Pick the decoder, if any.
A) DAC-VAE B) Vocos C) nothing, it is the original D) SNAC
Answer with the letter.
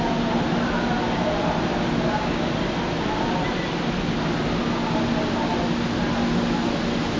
C